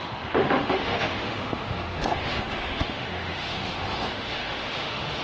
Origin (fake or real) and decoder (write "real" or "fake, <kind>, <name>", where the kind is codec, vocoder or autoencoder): fake, autoencoder, DAC-VAE